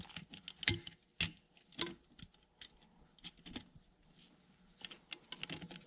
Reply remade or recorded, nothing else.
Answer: recorded